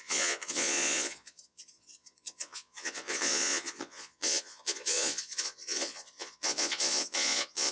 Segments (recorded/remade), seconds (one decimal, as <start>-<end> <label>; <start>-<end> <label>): 0.0-7.7 remade